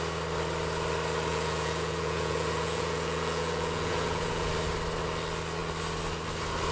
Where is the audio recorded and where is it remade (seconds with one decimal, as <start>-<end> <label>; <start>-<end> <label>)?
0.0-1.3 recorded; 1.3-4.5 remade; 4.5-6.7 recorded